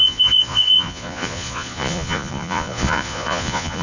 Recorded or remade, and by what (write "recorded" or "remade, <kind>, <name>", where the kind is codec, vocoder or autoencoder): remade, vocoder, Vocos